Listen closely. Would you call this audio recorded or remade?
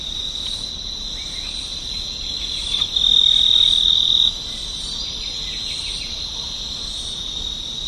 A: recorded